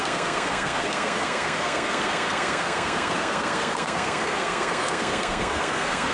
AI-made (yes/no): yes